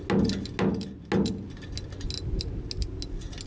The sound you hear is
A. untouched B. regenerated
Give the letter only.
A